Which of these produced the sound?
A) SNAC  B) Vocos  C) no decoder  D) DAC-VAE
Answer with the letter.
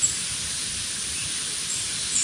C